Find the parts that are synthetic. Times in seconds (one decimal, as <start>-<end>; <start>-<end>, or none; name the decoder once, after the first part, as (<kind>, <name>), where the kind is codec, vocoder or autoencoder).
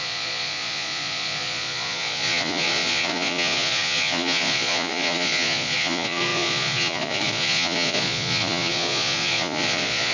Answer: 0.0-10.1 (vocoder, Vocos)